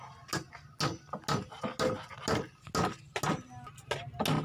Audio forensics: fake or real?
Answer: real